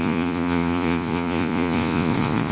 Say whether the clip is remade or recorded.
remade